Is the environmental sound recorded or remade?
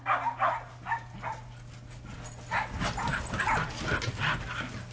recorded